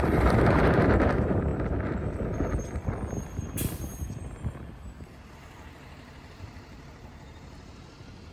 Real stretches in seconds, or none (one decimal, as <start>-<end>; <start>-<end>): 1.5-5.3